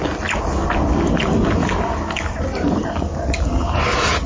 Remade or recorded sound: recorded